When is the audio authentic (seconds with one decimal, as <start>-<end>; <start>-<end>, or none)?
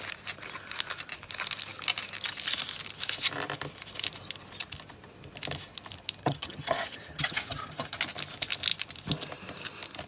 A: 0.0-6.2; 8.0-10.1